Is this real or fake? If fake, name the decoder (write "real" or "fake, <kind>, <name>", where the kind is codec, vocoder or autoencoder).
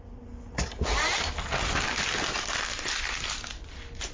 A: real